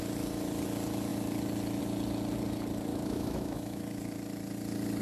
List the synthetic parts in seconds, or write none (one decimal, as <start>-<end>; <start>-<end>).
2.9-3.8